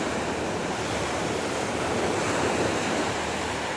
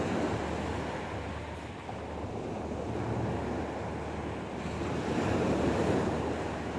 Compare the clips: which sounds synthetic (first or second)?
first